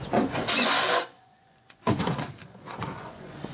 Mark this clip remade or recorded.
remade